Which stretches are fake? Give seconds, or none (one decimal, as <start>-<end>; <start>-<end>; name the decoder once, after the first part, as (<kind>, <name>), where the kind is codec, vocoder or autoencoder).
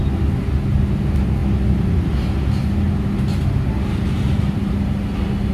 none